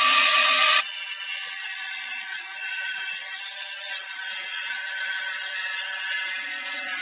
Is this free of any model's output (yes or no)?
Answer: no